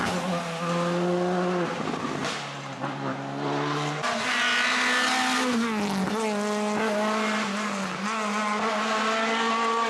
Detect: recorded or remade recorded